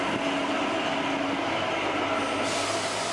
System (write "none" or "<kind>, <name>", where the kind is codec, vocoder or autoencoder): none